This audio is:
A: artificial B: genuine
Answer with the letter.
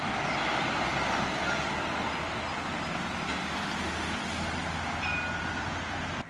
B